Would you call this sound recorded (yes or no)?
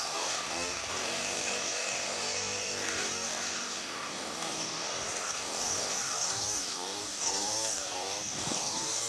no